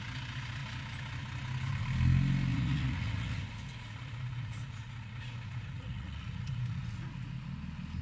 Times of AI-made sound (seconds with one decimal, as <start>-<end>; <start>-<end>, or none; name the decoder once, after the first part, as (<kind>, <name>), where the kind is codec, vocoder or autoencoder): 2.5-7.3 (vocoder, Vocos)